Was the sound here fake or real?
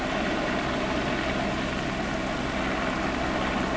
real